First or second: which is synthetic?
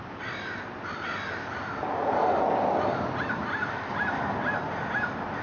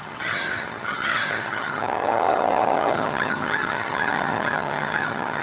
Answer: second